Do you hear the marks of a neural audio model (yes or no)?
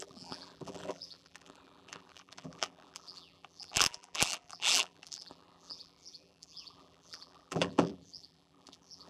yes